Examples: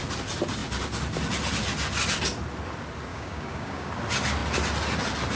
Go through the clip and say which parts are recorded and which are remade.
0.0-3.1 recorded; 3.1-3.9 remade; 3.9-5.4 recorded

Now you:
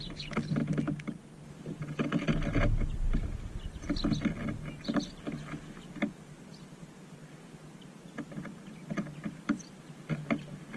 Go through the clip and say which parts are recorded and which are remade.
0.0-10.8 recorded

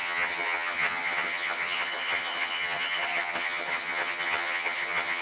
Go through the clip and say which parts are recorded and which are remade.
0.0-5.2 remade

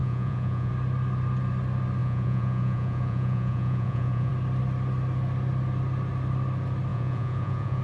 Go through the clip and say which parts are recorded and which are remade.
0.0-0.7 remade; 0.7-2.0 recorded; 2.0-4.3 remade; 4.3-6.9 recorded; 6.9-7.8 remade

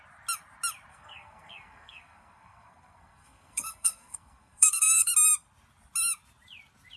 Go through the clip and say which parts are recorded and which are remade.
0.0-0.9 recorded; 0.9-5.1 remade; 5.1-7.0 recorded